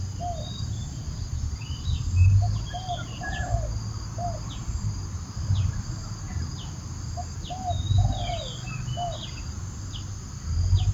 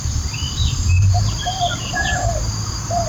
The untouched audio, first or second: first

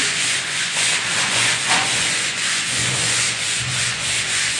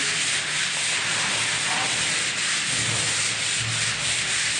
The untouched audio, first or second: second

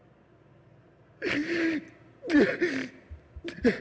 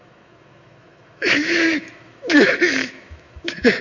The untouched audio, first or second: first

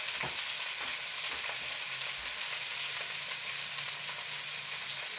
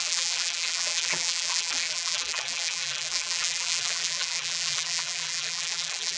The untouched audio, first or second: first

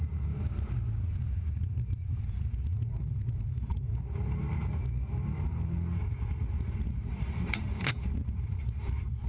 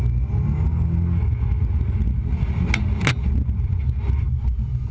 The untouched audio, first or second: second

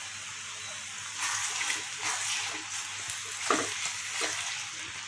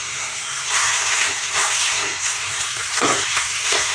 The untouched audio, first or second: first